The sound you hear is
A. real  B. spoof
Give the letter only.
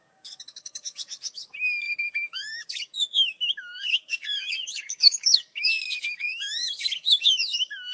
B